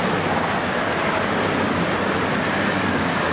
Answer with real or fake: real